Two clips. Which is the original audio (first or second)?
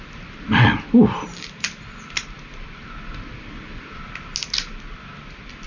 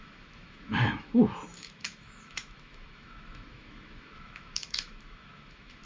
first